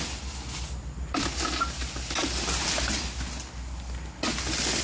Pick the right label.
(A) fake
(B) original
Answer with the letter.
B